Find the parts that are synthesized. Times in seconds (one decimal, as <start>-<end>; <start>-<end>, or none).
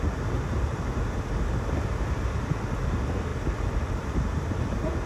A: 3.3-5.1